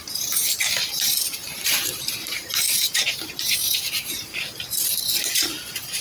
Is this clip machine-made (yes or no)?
yes